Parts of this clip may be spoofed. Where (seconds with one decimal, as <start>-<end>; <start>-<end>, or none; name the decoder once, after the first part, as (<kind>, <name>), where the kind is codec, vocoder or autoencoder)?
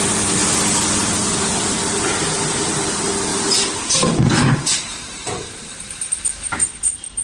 3.3-6.1 (vocoder, BigVGAN v2)